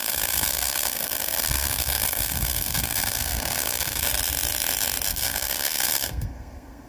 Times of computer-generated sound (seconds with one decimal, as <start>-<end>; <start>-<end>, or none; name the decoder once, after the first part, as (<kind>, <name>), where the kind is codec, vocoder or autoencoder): 0.0-4.1 (codec, SNAC); 5.1-6.9

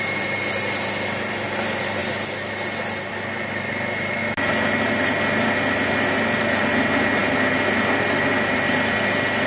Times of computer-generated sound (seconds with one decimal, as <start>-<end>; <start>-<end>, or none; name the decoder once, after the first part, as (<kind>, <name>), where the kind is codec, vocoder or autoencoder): none

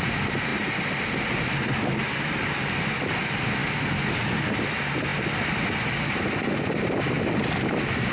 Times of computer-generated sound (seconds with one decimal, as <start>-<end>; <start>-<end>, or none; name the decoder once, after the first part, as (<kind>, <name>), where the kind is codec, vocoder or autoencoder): none

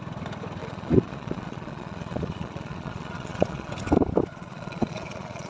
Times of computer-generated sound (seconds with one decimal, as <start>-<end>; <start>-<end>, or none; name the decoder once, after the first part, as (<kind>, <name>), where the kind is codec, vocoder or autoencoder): 0.6-3.7 (vocoder, Vocos); 4.3-5.5

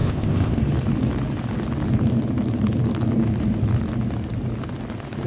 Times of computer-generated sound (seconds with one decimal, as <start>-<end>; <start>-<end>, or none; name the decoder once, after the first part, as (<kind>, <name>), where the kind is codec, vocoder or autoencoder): 0.0-0.6 (codec, ZipCodec)

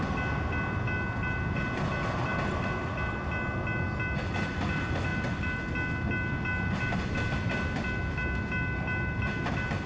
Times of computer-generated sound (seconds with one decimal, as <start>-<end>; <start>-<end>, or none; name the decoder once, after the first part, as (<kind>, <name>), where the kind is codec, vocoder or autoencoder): none